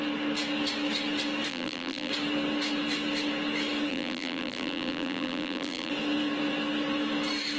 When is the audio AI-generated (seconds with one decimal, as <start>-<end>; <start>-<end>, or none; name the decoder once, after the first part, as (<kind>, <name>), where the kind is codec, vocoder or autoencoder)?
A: 1.5-2.1 (vocoder, BigVGAN v2); 3.9-5.9